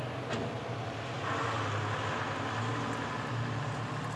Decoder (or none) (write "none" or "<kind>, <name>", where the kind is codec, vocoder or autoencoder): none